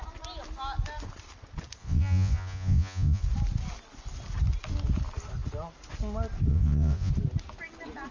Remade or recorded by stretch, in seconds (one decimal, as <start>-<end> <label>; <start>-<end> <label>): 0.0-1.8 recorded; 1.8-3.2 remade; 3.2-6.5 recorded; 6.5-7.1 remade; 7.1-8.1 recorded